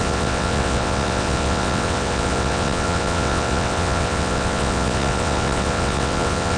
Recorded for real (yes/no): no